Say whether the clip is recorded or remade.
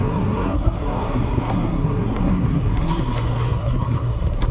remade